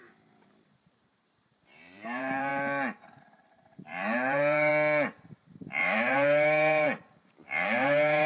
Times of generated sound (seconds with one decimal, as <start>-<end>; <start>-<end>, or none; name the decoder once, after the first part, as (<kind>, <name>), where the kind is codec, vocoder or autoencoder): 0.0-2.5 (vocoder, BigVGAN v2); 3.2-4.7; 5.3-8.3